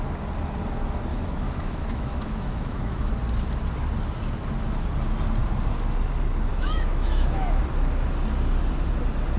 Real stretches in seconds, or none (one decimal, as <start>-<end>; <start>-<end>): 0.0-1.1; 3.1-6.5; 7.6-9.4